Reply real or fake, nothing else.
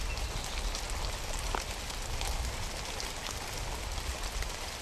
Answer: real